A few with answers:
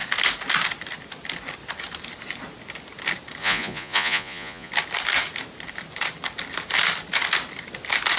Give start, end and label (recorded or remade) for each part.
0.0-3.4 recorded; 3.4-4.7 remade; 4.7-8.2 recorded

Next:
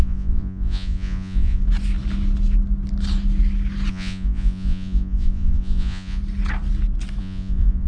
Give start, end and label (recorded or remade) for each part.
0.0-1.6 remade; 1.6-3.9 recorded; 3.9-6.2 remade; 6.2-7.2 recorded; 7.2-7.9 remade